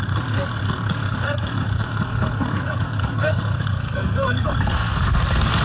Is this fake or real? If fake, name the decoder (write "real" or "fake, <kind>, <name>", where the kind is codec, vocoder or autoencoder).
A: fake, codec, SNAC